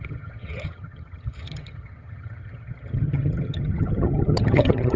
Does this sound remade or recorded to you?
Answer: remade